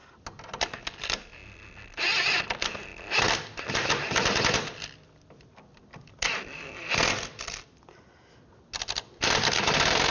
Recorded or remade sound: recorded